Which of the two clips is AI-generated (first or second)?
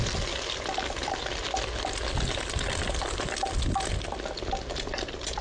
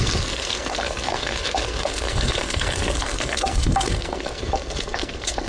second